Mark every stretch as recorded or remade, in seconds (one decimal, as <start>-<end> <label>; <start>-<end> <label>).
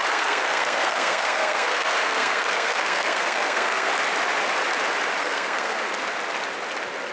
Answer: 0.0-3.9 remade; 3.9-5.2 recorded; 5.2-5.9 remade; 5.9-7.1 recorded